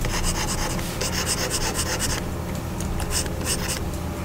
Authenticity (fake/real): real